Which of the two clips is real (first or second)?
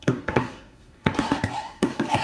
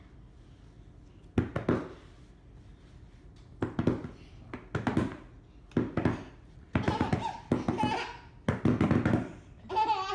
second